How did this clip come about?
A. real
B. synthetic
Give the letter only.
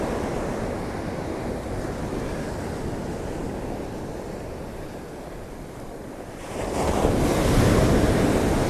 A